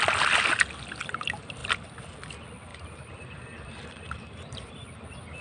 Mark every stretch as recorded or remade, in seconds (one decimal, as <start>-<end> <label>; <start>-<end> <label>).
0.0-2.7 recorded; 2.7-4.7 remade; 4.7-5.4 recorded